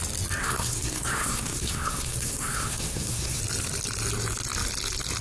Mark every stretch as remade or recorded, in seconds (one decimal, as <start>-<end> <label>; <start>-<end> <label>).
0.0-0.4 recorded; 0.4-3.4 remade; 3.4-5.2 recorded